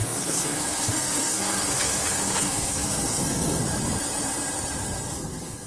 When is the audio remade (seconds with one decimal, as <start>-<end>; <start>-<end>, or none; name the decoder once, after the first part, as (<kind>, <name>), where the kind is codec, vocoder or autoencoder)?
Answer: 0.0-3.6 (codec, SNAC); 5.1-5.7